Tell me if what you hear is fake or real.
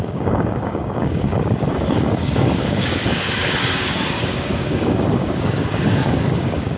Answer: fake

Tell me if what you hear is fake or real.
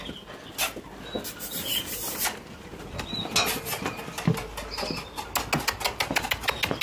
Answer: real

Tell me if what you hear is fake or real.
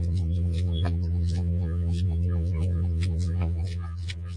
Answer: fake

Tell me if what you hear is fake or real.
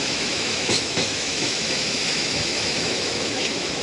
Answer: fake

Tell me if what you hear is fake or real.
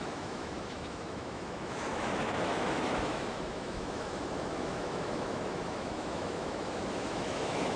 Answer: fake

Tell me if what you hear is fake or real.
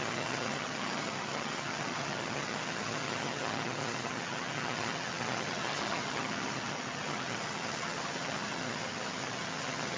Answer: fake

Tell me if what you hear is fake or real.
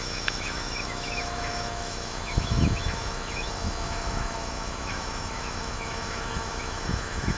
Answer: fake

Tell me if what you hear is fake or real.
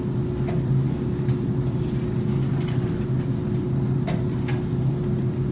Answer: real